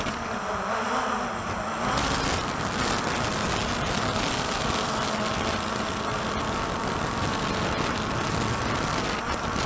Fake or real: real